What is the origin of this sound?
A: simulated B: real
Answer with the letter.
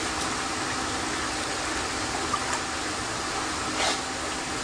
B